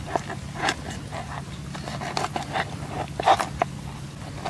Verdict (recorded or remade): recorded